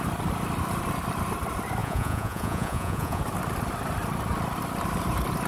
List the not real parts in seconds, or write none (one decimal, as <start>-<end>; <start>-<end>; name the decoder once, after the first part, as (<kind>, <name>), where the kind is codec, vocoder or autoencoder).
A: 1.8-3.2 (vocoder, Vocos)

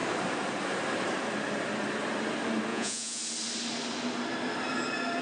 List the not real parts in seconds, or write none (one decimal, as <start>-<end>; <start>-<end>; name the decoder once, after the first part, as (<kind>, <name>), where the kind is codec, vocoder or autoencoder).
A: 2.7-3.2 (vocoder, Vocos)